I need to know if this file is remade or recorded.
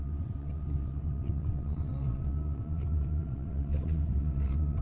remade